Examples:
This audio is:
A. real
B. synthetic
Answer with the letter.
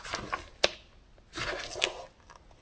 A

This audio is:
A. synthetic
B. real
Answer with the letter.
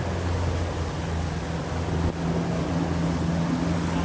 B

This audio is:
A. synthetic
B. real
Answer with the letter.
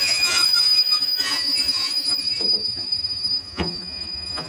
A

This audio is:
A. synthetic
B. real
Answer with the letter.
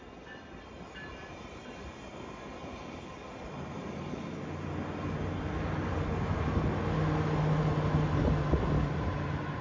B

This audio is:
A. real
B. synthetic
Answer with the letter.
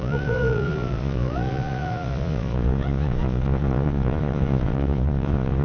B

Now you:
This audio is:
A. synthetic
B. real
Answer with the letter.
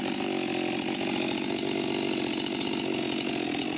B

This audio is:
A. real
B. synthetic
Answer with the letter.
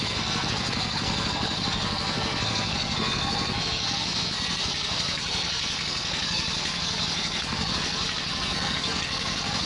B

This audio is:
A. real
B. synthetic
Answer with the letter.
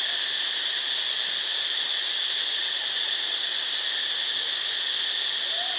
A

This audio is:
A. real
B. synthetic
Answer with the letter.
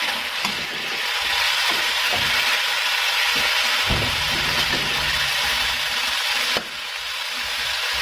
A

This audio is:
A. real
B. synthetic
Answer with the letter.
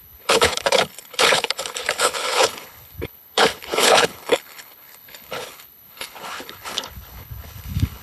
B